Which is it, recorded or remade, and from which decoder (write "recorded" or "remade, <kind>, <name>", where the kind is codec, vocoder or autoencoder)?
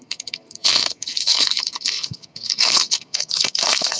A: remade, codec, SNAC